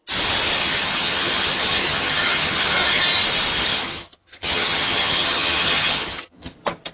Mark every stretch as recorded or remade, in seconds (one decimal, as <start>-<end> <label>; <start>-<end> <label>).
0.0-0.6 recorded; 0.6-3.0 remade; 3.0-3.7 recorded; 3.7-6.5 remade; 6.5-6.9 recorded